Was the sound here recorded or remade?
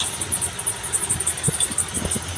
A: recorded